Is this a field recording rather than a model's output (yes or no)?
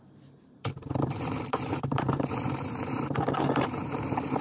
no